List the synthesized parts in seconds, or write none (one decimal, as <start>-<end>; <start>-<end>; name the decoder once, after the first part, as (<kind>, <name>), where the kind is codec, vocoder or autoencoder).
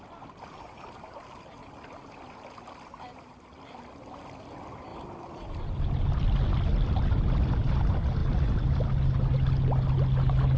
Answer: none